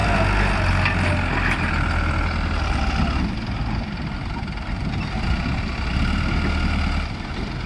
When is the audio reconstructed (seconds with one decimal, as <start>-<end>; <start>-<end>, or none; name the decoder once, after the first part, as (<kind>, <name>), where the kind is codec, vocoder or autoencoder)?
none